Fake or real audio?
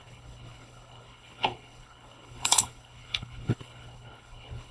fake